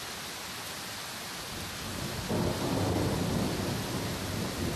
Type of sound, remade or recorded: recorded